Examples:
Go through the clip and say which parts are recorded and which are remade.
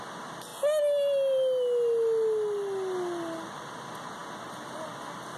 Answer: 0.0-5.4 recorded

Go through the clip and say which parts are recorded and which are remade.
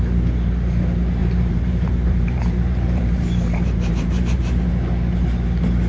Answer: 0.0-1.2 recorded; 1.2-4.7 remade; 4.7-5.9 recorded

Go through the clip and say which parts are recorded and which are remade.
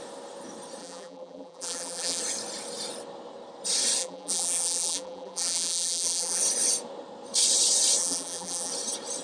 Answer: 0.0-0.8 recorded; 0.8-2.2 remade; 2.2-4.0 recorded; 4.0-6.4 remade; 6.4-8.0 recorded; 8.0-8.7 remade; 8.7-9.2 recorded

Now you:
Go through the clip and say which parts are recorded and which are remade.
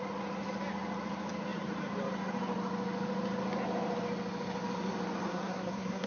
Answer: 0.0-5.3 recorded; 5.3-6.1 remade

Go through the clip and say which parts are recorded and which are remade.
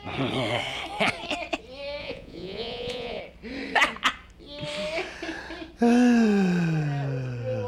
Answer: 0.0-2.0 recorded; 2.0-3.2 remade; 3.2-7.7 recorded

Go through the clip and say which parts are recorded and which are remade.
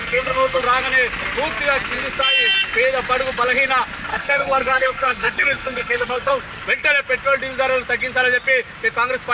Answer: 0.0-0.6 remade; 0.6-4.1 recorded; 4.1-6.3 remade; 6.3-9.3 recorded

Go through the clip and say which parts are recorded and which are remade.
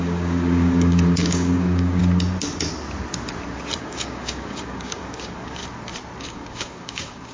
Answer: 0.0-2.0 remade; 2.0-3.8 recorded; 3.8-5.6 remade; 5.6-6.2 recorded; 6.2-7.3 remade